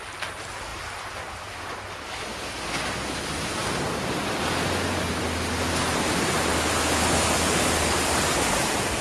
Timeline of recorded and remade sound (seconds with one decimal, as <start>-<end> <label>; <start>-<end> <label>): 0.0-3.6 recorded; 3.6-4.2 remade; 4.2-9.0 recorded